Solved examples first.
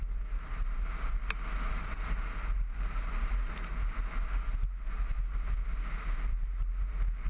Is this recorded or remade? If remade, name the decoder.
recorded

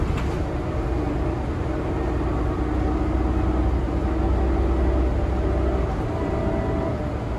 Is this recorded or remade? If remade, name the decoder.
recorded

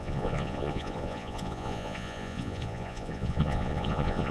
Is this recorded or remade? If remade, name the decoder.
remade, vocoder, Vocos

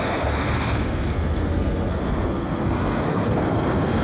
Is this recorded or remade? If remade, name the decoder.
remade, codec, SNAC